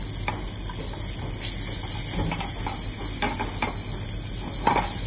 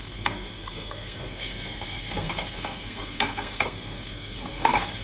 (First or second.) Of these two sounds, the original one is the first